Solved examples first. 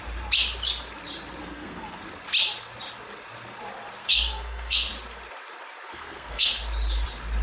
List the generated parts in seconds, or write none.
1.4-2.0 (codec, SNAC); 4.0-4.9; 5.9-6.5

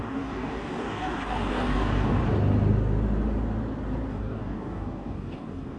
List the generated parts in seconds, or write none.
0.0-2.2 (codec, DAC); 4.1-5.8

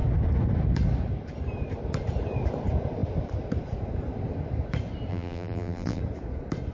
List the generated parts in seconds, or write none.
5.1-6.0 (vocoder, BigVGAN v2)

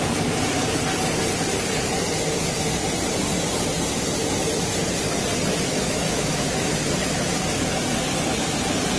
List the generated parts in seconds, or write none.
5.7-6.7 (autoencoder, DAC-VAE)

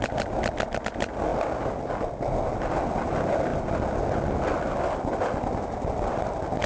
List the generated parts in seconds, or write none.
none